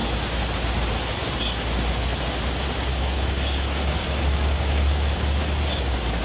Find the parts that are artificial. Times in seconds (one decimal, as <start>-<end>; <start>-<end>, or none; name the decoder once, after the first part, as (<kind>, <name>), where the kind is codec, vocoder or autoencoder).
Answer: 2.9-5.6 (codec, DAC)